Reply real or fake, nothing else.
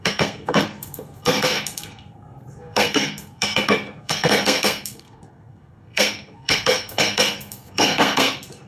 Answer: fake